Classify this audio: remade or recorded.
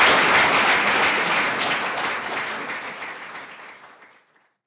recorded